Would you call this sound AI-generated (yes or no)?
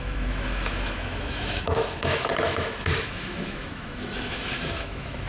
yes